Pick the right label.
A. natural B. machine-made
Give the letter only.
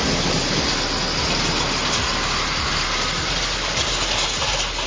A